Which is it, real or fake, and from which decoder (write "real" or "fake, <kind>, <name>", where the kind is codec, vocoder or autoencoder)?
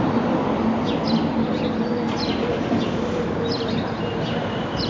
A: real